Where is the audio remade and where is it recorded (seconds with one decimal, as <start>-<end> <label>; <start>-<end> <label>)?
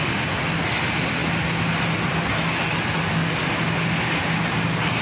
0.0-5.0 recorded